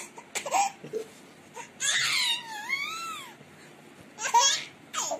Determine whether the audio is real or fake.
real